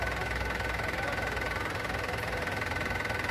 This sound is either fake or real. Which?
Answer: real